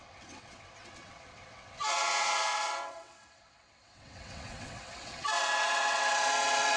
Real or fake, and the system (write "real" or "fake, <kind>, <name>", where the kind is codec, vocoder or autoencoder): fake, vocoder, WaveNeXt